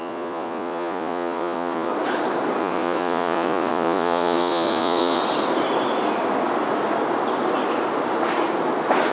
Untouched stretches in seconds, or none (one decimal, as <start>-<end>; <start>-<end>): 1.9-2.6; 5.2-9.1